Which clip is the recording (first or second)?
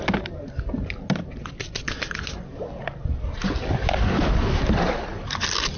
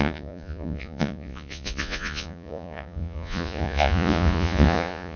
first